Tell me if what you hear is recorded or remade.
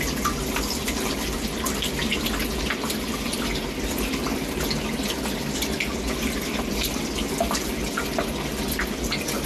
recorded